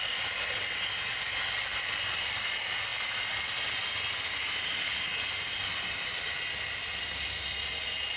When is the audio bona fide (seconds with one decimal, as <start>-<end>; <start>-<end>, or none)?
0.0-8.2